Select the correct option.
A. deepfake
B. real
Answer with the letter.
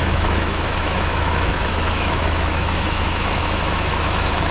A